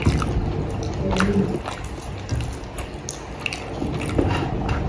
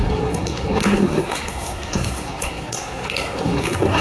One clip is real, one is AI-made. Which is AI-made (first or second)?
second